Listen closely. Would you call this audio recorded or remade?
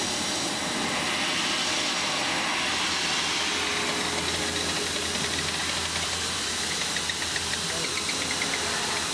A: recorded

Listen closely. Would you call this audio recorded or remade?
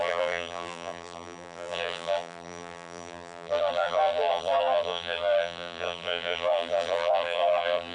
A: remade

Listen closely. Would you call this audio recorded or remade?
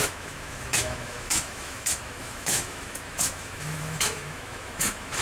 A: remade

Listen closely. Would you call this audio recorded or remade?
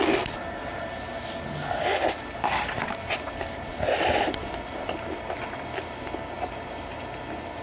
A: recorded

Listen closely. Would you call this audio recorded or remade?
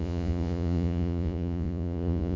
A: remade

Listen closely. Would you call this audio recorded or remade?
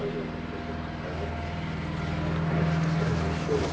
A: recorded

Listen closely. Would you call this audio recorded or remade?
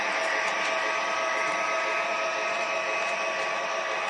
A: recorded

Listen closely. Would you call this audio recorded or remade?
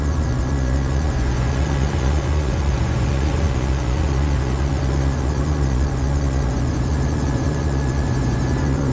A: remade